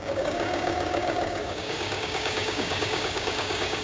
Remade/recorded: remade